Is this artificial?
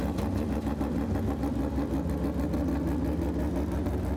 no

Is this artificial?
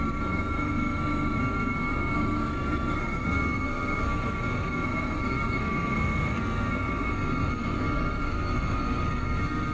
yes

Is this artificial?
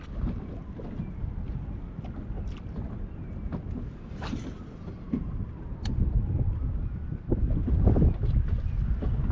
no